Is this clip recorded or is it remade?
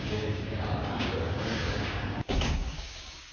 remade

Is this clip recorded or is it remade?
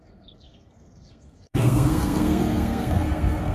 remade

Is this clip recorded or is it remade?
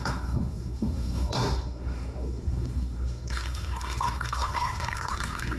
remade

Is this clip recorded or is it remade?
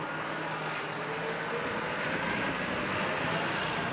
recorded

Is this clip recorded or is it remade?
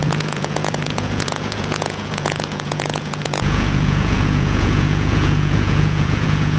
remade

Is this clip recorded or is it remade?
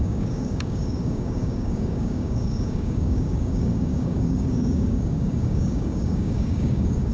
remade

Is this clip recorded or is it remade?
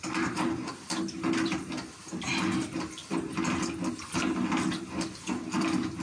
recorded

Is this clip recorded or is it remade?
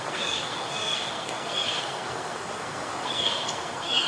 remade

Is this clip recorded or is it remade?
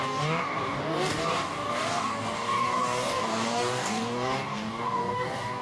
remade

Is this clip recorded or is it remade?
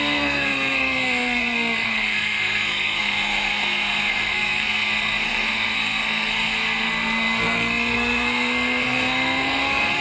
remade